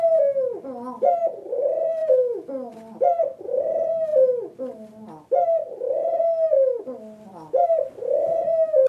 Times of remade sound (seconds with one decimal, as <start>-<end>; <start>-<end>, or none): none